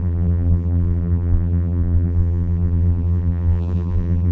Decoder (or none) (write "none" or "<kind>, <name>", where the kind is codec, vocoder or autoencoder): vocoder, BigVGAN v2